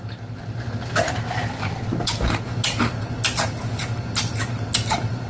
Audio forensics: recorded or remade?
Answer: recorded